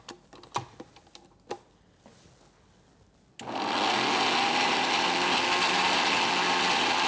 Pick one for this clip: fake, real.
real